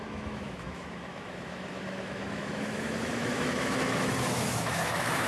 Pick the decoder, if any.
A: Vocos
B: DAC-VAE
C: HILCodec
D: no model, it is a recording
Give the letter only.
B